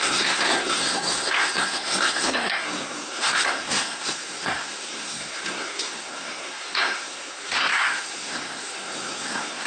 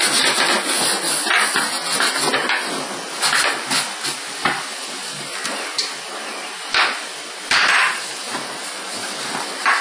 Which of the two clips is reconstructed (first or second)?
first